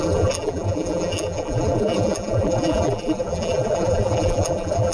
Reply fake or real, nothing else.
fake